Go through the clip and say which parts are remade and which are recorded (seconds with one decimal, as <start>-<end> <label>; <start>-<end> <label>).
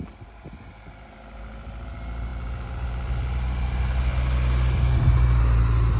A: 0.0-6.0 recorded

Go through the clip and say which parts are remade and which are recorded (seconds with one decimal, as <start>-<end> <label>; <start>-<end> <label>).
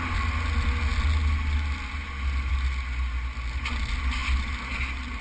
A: 0.0-5.2 recorded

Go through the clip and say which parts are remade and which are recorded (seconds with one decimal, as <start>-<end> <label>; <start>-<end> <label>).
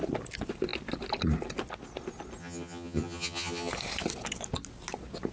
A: 0.0-2.4 recorded; 2.4-3.7 remade; 3.7-5.3 recorded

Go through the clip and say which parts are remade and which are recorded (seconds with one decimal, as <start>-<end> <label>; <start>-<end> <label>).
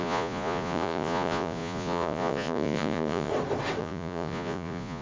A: 0.0-3.3 remade; 3.3-3.8 recorded; 3.8-5.0 remade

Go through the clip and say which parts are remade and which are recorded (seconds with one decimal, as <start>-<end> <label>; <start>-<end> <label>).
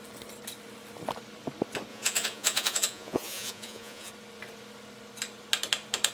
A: 0.0-1.9 recorded; 1.9-4.1 remade; 4.1-6.1 recorded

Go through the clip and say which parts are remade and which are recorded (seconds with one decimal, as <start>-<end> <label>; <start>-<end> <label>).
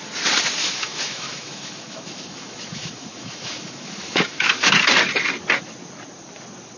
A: 0.0-0.6 recorded; 0.6-4.7 remade; 4.7-6.8 recorded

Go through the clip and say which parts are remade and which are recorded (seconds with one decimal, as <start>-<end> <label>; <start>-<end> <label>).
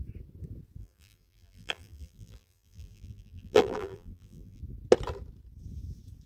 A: 0.0-0.8 recorded; 0.8-4.6 remade; 4.6-6.3 recorded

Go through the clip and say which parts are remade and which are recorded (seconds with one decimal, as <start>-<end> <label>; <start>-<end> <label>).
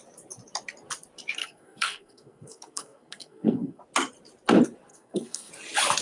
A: 0.0-1.4 recorded; 1.4-3.8 remade; 3.8-4.9 recorded; 4.9-5.5 remade; 5.5-6.0 recorded